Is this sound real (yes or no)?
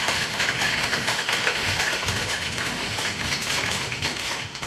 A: no